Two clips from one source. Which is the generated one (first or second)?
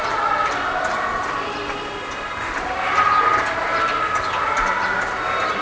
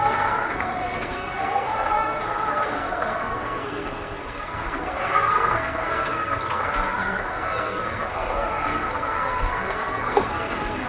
second